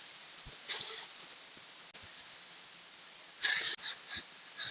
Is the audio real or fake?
real